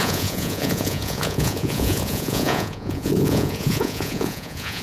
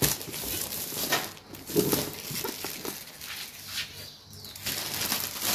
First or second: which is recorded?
second